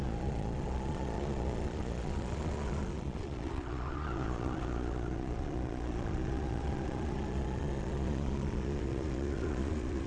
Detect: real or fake fake